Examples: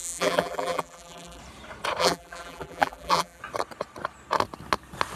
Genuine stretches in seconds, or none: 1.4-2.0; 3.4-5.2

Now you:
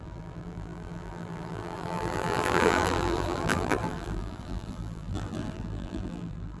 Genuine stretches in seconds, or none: none

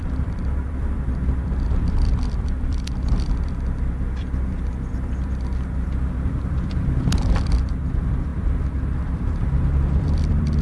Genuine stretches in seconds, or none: none

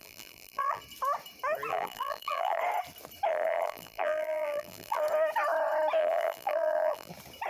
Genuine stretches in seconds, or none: 0.8-1.7; 2.6-3.3; 5.0-6.0; 7.1-7.5

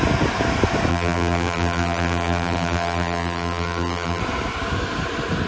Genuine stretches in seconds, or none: 0.0-0.9; 4.2-5.5

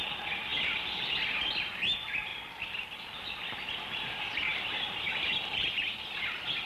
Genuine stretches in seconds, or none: 0.0-2.3; 2.8-6.7